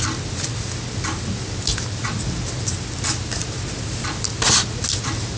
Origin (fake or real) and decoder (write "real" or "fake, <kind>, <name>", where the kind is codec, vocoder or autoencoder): real